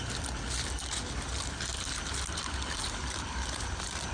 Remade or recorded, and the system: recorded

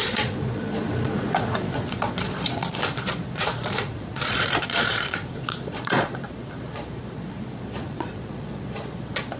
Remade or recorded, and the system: remade, vocoder, Vocos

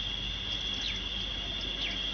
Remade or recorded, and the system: recorded